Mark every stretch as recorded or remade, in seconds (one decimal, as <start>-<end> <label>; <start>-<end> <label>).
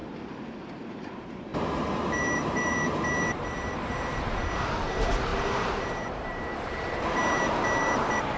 0.0-0.6 recorded; 0.6-8.4 remade